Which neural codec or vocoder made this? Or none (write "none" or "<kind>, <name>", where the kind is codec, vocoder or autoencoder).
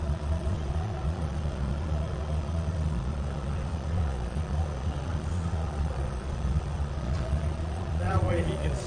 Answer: vocoder, Vocos